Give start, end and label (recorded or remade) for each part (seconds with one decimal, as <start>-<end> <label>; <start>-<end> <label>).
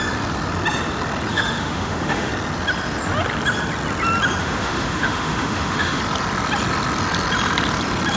0.0-1.3 recorded; 1.3-2.3 remade; 2.3-4.4 recorded; 4.4-6.0 remade; 6.0-8.2 recorded